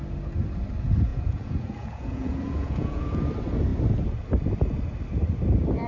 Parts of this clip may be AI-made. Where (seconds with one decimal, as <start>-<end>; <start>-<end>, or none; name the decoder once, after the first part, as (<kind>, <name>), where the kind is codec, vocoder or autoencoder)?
1.1-3.3 (vocoder, Vocos)